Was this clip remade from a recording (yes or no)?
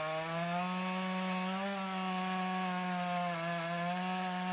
no